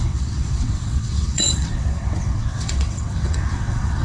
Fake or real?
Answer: fake